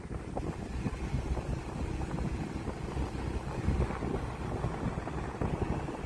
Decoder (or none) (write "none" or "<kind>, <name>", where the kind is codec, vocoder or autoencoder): none